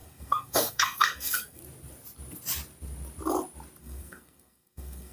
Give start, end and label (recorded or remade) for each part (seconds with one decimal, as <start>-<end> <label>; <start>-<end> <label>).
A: 0.0-1.6 remade; 1.6-3.8 recorded; 3.8-5.1 remade